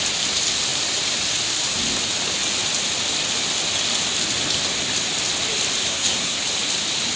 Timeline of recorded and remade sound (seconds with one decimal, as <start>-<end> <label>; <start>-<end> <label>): 0.0-5.9 recorded; 5.9-6.4 remade; 6.4-7.2 recorded